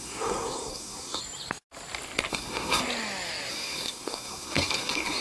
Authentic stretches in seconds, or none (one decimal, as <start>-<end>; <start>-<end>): 1.2-2.3; 2.8-3.5